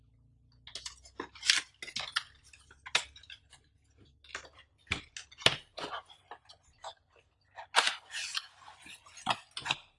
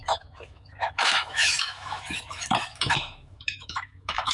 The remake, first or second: second